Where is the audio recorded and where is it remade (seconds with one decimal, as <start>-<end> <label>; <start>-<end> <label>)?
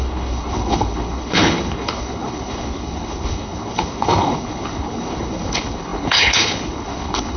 0.0-7.4 remade